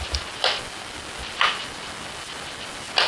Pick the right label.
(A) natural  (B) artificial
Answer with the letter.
A